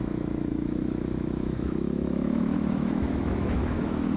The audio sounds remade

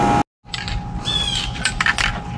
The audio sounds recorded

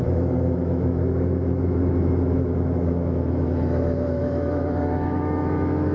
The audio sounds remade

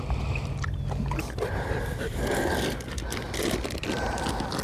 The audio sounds recorded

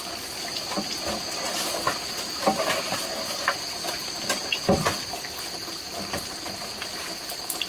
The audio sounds recorded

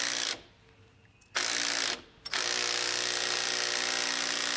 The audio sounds recorded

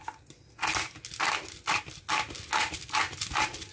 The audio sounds recorded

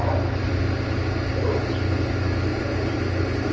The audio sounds recorded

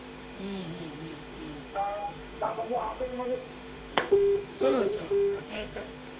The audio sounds remade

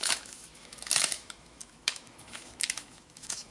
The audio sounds remade